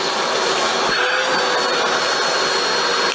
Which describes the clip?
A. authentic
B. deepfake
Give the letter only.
A